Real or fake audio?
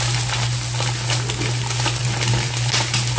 real